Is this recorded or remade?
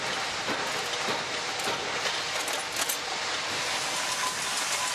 recorded